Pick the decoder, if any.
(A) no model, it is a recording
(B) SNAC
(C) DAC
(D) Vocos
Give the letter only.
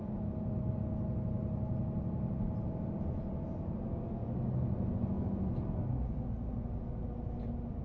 A